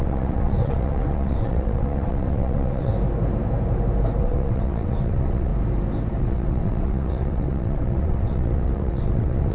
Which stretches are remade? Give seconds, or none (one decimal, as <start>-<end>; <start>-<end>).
0.0-2.9; 4.2-5.5; 6.2-9.5

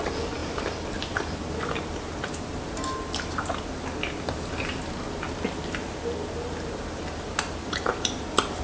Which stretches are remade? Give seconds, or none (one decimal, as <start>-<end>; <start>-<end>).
none

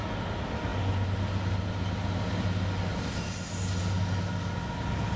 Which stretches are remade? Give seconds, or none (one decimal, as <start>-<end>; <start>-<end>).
none